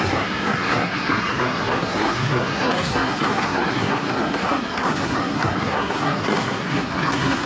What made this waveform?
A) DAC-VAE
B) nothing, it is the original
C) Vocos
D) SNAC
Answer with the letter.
D